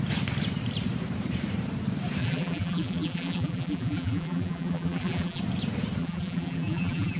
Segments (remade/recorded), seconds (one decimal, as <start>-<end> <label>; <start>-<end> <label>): 0.0-2.2 recorded; 2.2-5.4 remade; 5.4-6.0 recorded; 6.0-7.2 remade